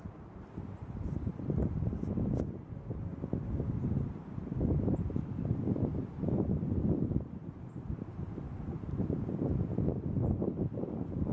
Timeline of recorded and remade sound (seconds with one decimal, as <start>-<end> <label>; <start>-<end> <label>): 0.0-3.1 remade; 3.1-4.0 recorded; 4.0-11.3 remade